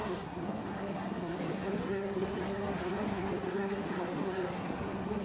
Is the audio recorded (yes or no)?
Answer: no